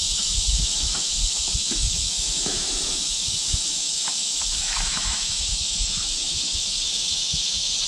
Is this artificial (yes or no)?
yes